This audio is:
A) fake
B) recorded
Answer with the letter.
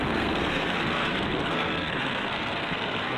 A